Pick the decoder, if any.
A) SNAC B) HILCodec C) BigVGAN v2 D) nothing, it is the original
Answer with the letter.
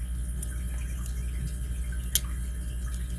D